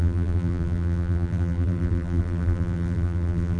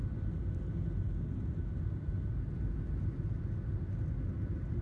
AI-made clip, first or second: first